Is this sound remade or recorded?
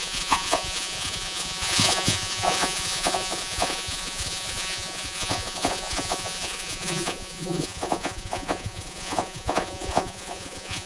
remade